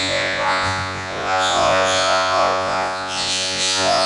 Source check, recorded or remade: remade